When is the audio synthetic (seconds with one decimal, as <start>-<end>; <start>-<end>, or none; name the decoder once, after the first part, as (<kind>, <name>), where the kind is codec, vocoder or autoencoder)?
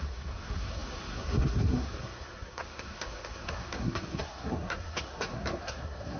0.0-6.2 (codec, SNAC)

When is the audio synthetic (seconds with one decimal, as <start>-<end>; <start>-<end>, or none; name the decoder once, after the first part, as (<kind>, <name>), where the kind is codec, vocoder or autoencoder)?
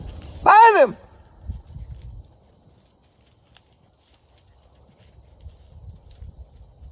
none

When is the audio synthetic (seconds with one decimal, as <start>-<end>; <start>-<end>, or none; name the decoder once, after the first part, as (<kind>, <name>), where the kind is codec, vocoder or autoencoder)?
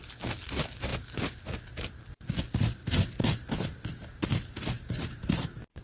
2.8-5.8 (vocoder, BigVGAN v2)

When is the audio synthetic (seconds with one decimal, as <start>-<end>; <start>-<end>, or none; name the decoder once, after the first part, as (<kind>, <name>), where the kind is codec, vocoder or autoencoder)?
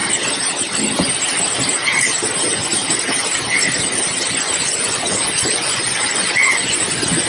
2.4-2.8 (vocoder, Vocos); 4.3-7.3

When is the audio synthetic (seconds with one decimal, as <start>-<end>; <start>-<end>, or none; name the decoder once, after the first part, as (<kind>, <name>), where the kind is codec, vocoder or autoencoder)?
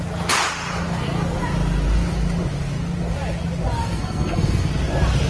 3.8-4.7 (codec, SNAC)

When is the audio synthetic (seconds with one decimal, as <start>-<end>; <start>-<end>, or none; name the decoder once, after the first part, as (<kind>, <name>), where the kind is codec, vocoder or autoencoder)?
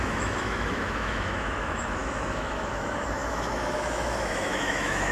0.0-5.1 (autoencoder, DAC-VAE)